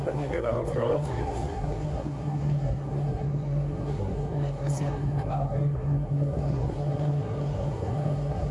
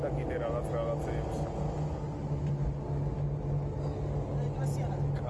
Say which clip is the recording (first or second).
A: second